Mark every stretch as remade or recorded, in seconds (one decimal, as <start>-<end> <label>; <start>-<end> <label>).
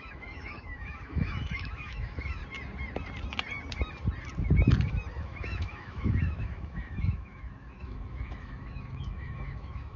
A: 0.0-2.4 remade; 2.4-5.2 recorded; 5.2-10.0 remade